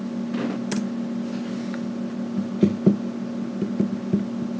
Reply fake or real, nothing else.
real